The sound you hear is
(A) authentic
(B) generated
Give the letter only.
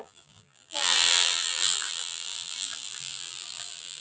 B